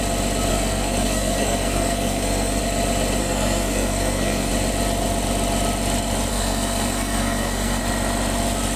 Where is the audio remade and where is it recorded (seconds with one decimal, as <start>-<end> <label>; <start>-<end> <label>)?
0.0-0.5 recorded; 0.5-2.6 remade; 2.6-3.2 recorded; 3.2-4.5 remade; 4.5-6.3 recorded; 6.3-7.8 remade; 7.8-8.8 recorded